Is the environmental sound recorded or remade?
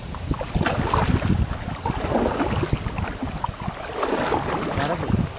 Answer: recorded